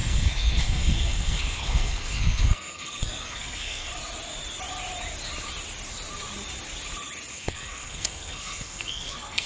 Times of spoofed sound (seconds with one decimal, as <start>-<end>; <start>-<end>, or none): 0.0-3.9; 7.3-9.5